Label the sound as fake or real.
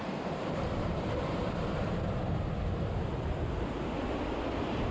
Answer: real